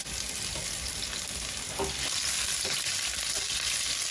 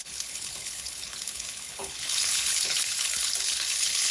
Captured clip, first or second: first